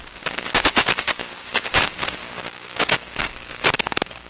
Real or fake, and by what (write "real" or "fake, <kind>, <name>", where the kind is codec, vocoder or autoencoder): fake, codec, DAC